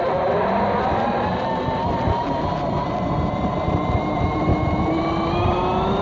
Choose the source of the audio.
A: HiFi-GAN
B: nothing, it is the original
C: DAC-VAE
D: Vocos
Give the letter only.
B